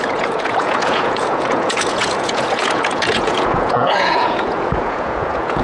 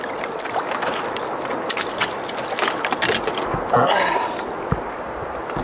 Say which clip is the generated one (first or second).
first